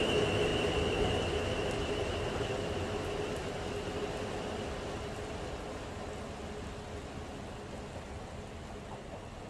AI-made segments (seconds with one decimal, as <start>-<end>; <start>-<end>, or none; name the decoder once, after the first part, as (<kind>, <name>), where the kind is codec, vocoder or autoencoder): none